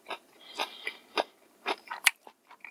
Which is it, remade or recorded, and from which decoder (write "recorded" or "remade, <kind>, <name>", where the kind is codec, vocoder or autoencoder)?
remade, vocoder, BigVGAN v2